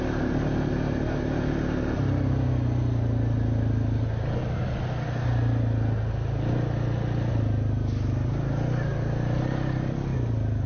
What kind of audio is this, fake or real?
real